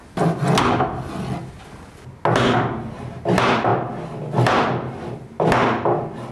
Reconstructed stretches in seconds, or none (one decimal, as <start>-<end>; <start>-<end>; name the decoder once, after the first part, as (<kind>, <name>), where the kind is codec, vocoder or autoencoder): none